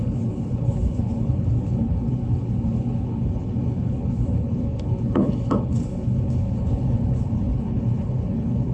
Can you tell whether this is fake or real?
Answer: fake